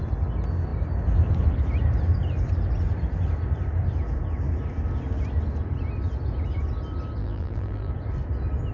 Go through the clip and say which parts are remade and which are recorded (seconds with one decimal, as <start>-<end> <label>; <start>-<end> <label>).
0.0-7.2 recorded; 7.2-7.9 remade; 7.9-8.7 recorded